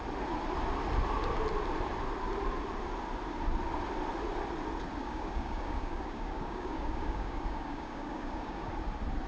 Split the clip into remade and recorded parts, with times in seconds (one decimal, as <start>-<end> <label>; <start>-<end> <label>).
0.0-5.0 recorded; 5.0-8.7 remade; 8.7-9.3 recorded